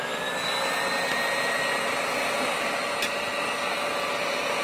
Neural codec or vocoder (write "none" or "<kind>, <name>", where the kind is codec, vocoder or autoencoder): none